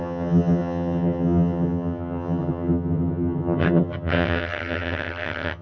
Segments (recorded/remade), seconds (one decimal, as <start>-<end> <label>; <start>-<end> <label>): 0.0-5.6 remade